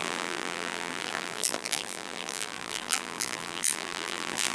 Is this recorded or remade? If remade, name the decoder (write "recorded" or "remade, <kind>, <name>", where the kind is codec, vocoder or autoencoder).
remade, vocoder, BigVGAN v2